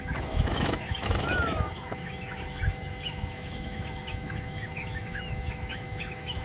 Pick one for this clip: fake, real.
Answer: fake